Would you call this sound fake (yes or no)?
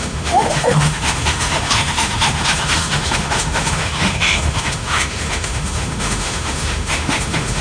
yes